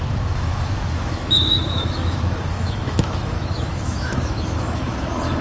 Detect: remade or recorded remade